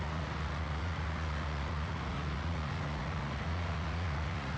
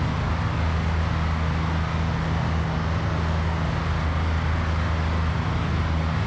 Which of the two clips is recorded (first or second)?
second